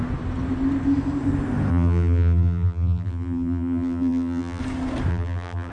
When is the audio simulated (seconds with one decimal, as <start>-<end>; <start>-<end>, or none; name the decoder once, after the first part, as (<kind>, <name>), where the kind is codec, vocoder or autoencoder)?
1.7-4.6 (vocoder, BigVGAN v2); 5.1-5.7